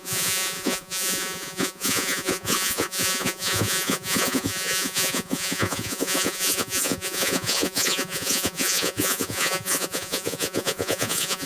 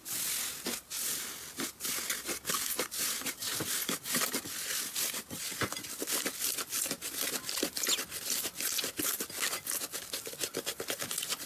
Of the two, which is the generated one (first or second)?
first